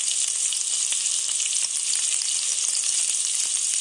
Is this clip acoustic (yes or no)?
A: yes